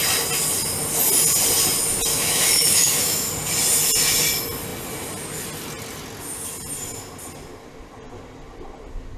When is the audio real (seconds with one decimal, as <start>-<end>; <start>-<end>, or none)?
0.0-2.1; 3.3-9.2